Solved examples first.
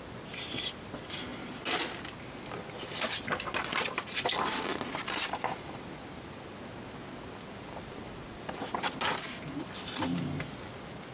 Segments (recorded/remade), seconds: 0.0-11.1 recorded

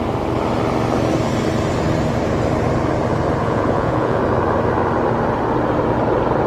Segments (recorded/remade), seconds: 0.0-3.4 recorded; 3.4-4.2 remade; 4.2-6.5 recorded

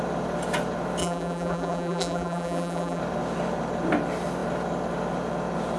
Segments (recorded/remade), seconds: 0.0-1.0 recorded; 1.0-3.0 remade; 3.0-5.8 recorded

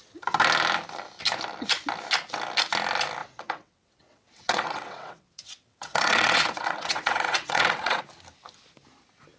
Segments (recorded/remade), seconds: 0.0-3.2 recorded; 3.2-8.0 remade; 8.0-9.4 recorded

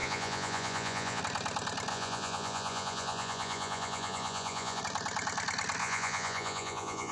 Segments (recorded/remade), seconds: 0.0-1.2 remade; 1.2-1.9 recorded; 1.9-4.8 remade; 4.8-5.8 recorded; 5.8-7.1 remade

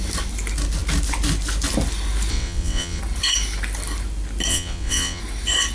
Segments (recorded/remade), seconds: 0.0-2.3 recorded; 2.3-3.0 remade; 3.0-4.5 recorded; 4.5-5.2 remade; 5.2-5.7 recorded

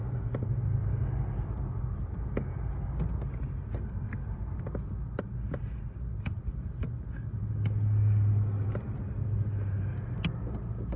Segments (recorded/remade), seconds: 0.0-11.0 recorded